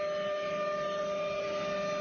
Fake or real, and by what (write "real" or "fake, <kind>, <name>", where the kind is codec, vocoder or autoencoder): real